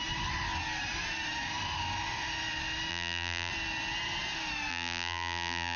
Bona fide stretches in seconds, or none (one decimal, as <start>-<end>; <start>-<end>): 0.0-2.9; 3.5-4.7